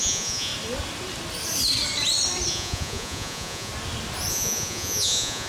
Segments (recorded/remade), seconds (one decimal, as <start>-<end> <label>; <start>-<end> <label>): 0.0-0.5 remade; 0.5-2.5 recorded; 2.5-3.7 remade; 3.7-4.3 recorded; 4.3-5.5 remade